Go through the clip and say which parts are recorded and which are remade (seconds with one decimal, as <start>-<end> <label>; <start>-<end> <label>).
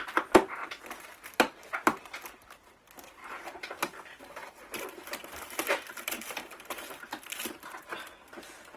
0.0-3.2 recorded; 3.2-7.8 remade; 7.8-8.8 recorded